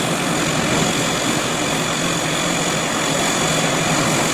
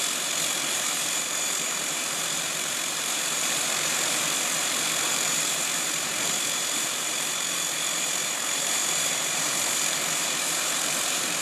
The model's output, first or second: second